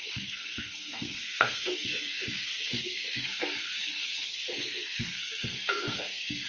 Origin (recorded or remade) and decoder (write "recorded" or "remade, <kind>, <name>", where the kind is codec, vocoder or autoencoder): remade, codec, SNAC